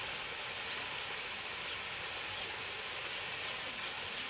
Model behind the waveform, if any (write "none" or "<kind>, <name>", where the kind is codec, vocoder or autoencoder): none